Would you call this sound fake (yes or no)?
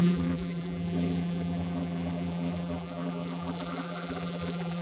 yes